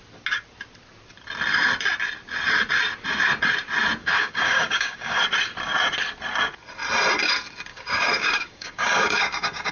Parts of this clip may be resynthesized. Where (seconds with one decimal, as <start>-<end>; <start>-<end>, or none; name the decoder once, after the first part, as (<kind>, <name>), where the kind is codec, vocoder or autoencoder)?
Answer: 4.0-5.2 (codec, DAC); 7.7-9.7